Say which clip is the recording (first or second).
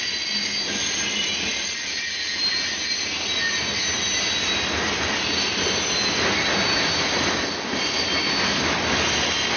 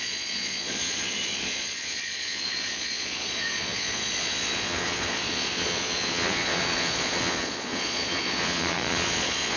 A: first